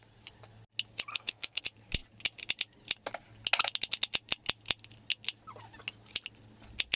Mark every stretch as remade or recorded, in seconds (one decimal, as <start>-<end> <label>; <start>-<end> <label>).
0.0-1.1 recorded; 1.1-1.6 remade; 1.6-7.0 recorded

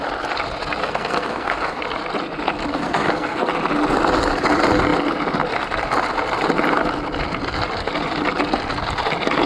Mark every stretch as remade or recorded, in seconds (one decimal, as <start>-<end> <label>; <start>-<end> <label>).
0.0-0.8 recorded; 0.8-1.8 remade; 1.8-2.7 recorded; 2.7-3.5 remade; 3.5-9.5 recorded

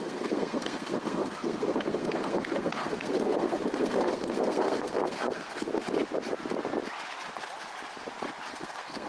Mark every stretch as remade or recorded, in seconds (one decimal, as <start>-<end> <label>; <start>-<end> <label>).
0.0-5.7 remade; 5.7-8.5 recorded; 8.5-9.1 remade

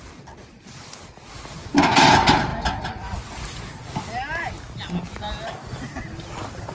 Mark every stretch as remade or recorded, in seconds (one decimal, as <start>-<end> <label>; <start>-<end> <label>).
0.0-6.7 recorded

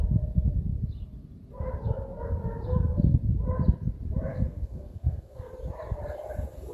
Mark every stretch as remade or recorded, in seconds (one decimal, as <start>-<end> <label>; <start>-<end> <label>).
0.0-4.3 recorded; 4.3-5.5 remade; 5.5-6.7 recorded

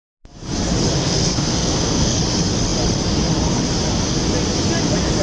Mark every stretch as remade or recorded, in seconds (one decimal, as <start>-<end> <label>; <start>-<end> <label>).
0.0-1.0 recorded; 1.0-2.2 remade; 2.2-5.2 recorded

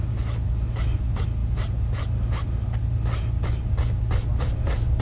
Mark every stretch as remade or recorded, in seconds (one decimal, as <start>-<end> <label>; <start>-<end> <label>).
0.0-5.0 recorded